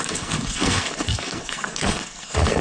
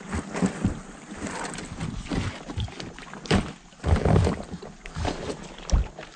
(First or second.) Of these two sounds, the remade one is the first